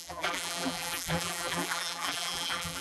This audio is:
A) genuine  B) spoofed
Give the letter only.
B